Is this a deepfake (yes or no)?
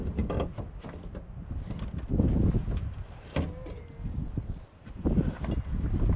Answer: no